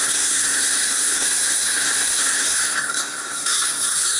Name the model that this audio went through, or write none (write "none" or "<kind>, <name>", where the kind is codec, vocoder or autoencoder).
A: codec, SNAC